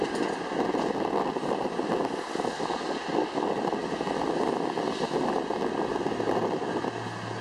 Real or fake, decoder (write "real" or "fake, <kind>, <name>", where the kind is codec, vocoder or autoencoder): real